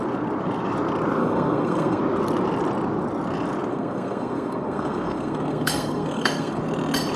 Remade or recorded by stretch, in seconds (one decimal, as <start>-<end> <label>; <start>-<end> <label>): 0.0-1.2 recorded; 1.2-2.0 remade; 2.0-3.7 recorded; 3.7-6.6 remade; 6.6-7.2 recorded